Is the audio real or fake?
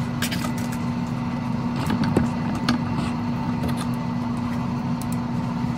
real